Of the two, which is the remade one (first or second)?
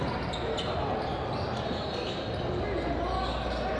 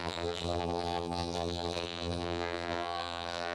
second